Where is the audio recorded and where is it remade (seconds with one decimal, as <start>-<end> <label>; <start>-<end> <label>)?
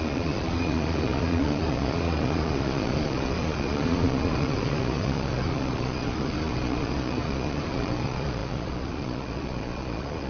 0.0-10.3 remade